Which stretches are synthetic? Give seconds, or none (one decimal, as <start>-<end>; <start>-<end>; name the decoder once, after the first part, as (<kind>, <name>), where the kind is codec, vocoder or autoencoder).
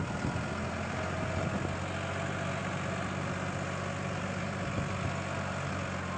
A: none